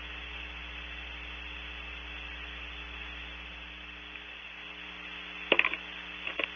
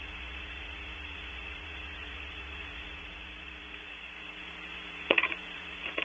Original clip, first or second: first